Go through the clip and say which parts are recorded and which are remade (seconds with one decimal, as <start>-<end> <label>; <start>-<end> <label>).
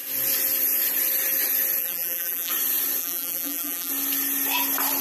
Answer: 0.0-1.8 recorded; 1.8-2.5 remade; 2.5-3.0 recorded; 3.0-3.9 remade; 3.9-5.0 recorded